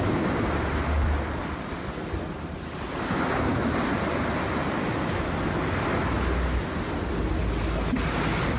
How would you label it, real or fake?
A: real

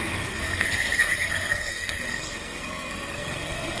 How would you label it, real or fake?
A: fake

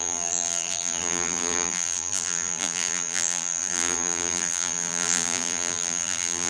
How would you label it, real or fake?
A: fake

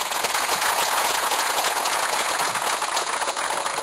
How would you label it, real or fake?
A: fake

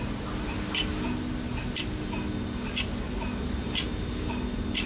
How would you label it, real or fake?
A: real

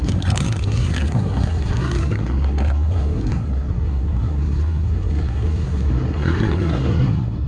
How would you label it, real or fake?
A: fake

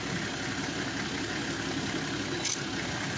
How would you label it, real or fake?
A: real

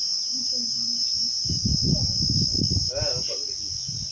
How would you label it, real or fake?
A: real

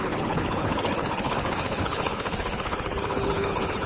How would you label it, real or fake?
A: fake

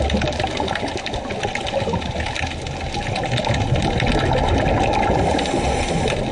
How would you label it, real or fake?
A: real